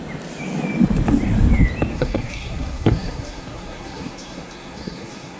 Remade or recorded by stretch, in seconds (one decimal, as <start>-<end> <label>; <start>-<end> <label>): 0.0-1.9 recorded; 1.9-5.4 remade